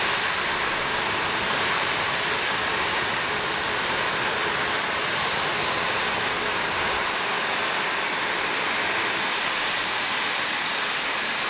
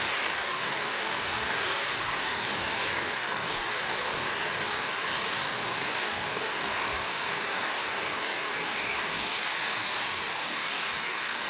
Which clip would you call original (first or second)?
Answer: first